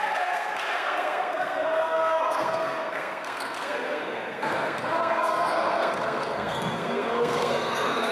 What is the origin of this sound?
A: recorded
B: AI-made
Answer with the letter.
B